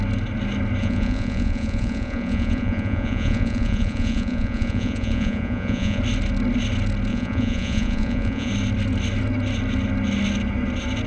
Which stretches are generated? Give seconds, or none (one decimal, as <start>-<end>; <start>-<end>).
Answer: 0.8-6.0; 7.1-8.5